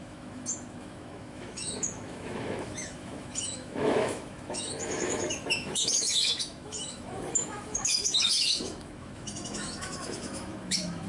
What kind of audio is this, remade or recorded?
remade